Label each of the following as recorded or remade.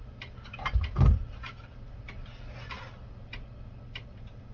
recorded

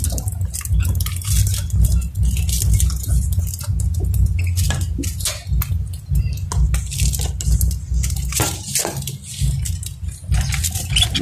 recorded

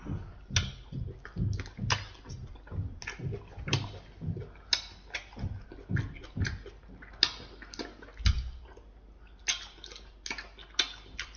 recorded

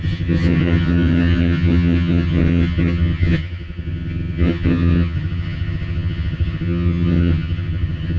remade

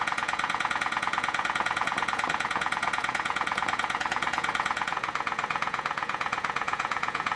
remade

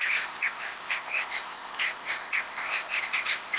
remade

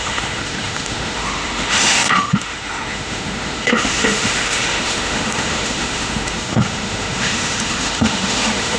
remade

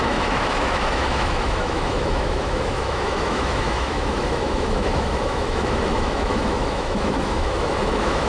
remade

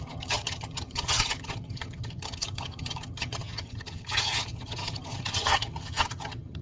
remade